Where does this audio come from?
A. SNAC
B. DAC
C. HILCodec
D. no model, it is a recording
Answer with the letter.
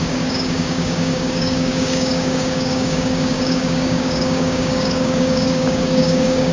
B